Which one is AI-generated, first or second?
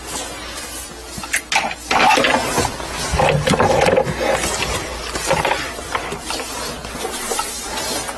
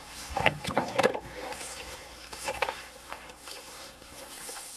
second